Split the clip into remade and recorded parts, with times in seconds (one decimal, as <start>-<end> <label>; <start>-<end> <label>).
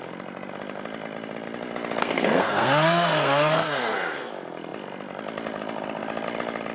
0.0-2.0 recorded; 2.0-4.3 remade; 4.3-6.7 recorded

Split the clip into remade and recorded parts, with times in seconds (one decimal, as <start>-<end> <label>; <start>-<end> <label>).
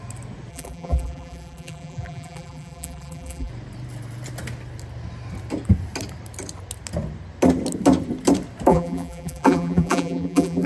0.0-0.5 recorded; 0.5-3.5 remade; 3.5-8.7 recorded; 8.7-10.7 remade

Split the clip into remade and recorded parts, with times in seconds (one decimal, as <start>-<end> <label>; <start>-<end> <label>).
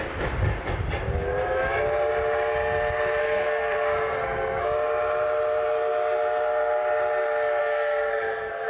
0.0-3.2 recorded; 3.2-4.6 remade; 4.6-7.6 recorded; 7.6-8.7 remade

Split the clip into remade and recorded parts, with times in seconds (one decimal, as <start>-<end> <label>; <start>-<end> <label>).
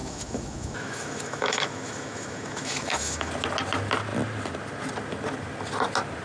0.0-3.3 remade; 3.3-6.2 recorded